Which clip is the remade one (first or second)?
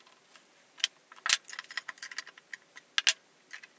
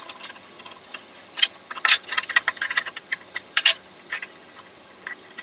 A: second